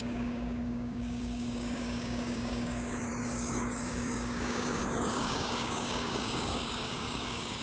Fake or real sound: fake